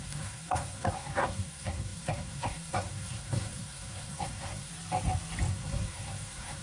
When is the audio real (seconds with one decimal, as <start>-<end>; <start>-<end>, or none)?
4.7-5.5